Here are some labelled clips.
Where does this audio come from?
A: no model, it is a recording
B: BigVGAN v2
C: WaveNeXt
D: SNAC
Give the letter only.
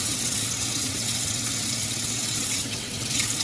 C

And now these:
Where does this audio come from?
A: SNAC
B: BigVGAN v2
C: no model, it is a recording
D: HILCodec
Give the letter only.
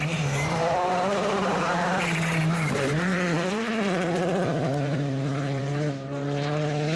B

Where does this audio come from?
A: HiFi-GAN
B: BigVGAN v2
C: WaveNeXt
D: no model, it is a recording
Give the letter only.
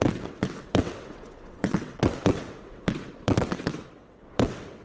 C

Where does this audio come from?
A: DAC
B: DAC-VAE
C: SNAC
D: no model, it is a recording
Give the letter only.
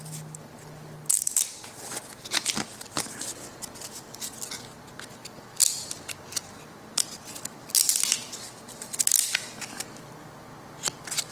D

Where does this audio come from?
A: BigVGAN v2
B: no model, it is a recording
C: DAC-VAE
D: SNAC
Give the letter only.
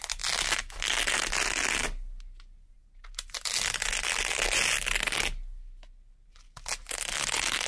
B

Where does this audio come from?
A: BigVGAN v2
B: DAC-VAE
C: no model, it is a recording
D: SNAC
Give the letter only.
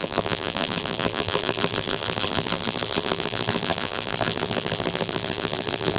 A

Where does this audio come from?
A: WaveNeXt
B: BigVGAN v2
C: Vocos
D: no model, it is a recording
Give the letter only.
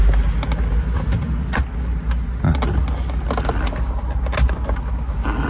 D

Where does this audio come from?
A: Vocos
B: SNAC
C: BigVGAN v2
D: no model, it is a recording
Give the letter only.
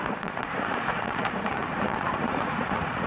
A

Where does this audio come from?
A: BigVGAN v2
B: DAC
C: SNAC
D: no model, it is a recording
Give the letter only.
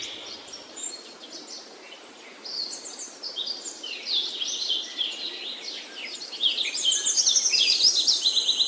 D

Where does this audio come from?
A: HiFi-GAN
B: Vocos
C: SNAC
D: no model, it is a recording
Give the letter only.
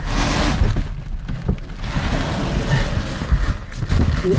D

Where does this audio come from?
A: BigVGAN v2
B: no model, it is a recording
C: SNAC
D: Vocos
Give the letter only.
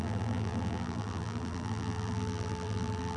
A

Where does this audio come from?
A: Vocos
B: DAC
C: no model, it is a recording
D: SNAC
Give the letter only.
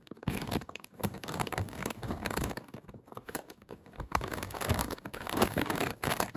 B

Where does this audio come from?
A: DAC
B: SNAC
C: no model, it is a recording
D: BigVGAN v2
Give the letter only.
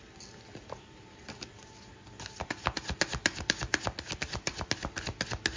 C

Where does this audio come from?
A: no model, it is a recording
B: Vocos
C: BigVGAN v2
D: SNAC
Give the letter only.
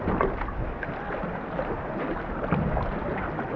A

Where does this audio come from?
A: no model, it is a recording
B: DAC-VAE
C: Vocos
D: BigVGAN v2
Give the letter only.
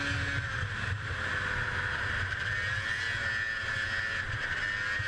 A